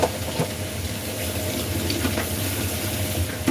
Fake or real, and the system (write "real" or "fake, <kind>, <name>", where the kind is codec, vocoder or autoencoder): real